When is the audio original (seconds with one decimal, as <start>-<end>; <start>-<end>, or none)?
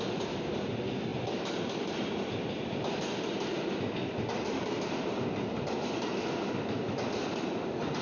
0.0-8.0